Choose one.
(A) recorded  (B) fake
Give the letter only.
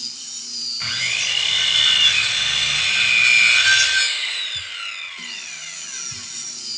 A